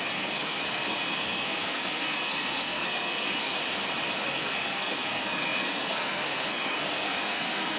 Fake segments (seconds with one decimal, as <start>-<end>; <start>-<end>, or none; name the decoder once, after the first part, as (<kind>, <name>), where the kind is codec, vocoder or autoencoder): 0.0-3.6 (codec, SNAC); 4.2-7.8